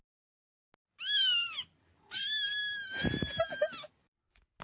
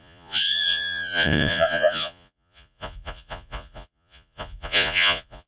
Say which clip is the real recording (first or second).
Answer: first